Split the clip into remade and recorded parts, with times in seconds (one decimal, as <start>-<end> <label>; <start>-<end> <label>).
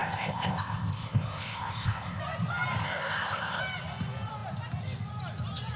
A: 0.0-2.2 remade; 2.2-2.8 recorded; 2.8-3.6 remade; 3.6-5.8 recorded